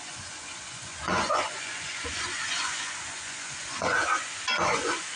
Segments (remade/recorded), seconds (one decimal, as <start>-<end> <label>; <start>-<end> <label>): 0.0-5.2 remade